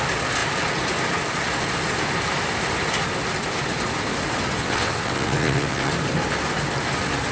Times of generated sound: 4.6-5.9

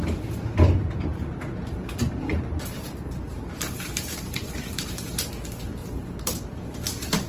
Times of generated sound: 1.1-5.3; 5.8-7.3

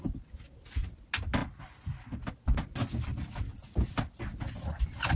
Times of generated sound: none

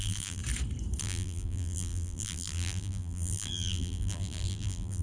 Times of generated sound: 0.0-0.4; 1.0-5.0

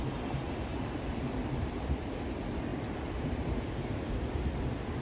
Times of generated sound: 0.7-1.8

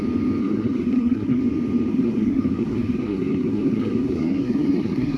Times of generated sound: 0.4-1.4; 1.9-5.2

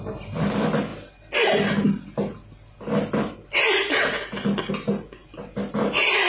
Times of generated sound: none